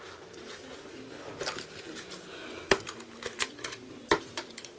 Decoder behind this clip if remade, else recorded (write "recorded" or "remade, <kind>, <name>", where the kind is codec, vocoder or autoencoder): recorded